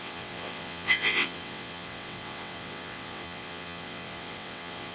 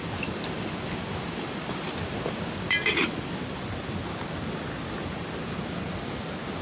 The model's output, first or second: first